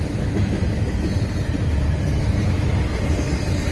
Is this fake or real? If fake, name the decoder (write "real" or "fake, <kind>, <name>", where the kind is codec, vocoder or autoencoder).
real